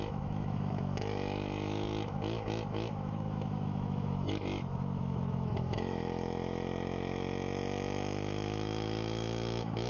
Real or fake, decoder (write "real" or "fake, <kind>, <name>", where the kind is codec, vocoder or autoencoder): fake, autoencoder, DAC-VAE